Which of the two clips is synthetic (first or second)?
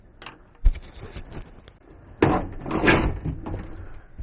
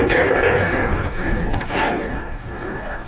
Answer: second